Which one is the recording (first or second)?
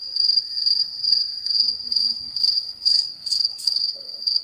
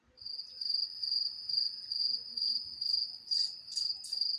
second